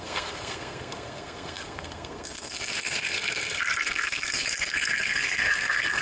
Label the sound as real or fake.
fake